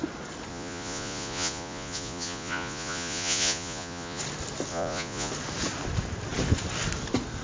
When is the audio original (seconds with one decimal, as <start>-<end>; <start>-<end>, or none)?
0.0-0.5; 4.2-4.7; 5.3-7.4